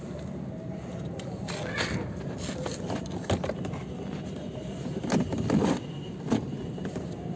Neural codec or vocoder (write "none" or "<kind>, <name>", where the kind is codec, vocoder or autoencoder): none